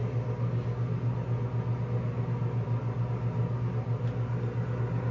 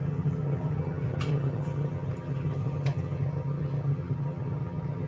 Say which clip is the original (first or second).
first